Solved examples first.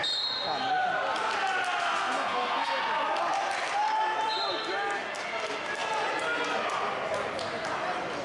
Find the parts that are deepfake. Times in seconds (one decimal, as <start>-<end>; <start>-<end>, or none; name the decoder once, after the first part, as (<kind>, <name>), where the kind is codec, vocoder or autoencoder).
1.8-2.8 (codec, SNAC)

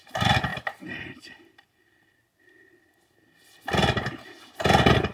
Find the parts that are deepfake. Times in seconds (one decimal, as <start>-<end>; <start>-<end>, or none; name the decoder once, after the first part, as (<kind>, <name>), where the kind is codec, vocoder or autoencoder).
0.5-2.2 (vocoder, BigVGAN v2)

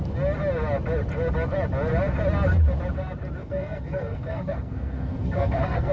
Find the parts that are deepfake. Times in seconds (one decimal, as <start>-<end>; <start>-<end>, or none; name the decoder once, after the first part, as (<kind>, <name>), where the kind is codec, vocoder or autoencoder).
3.4-5.9 (codec, SNAC)

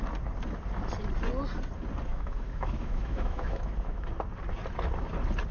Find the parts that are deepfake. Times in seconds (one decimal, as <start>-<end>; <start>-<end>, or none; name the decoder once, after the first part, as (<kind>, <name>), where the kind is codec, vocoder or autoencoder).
2.1-4.1 (autoencoder, DAC-VAE)